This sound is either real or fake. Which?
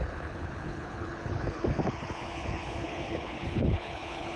fake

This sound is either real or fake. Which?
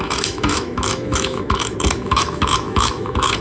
fake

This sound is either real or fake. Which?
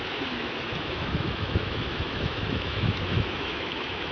fake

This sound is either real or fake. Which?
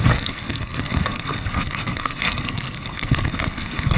fake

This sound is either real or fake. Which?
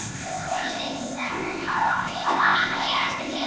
fake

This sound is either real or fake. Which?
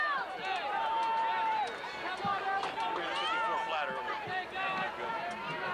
real